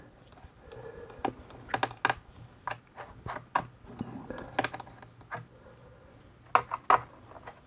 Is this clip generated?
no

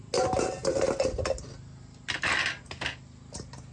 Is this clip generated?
no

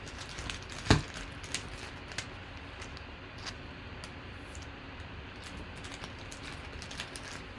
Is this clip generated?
no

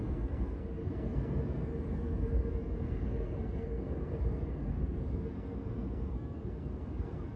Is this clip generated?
yes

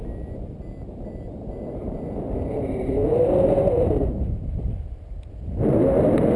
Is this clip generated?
no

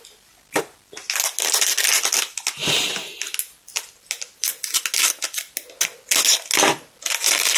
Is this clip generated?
no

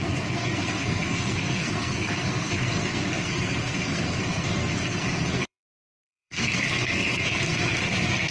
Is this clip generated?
yes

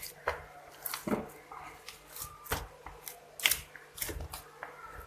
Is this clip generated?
no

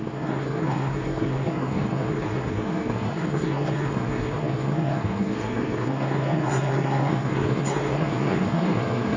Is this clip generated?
yes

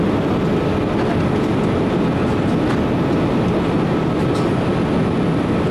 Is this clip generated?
no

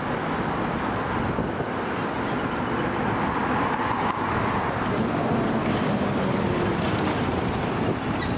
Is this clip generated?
no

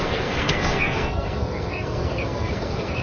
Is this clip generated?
yes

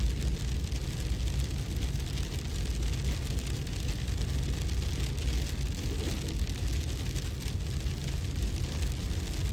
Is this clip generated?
no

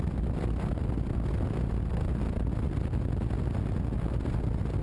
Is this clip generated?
no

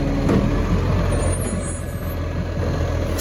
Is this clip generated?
no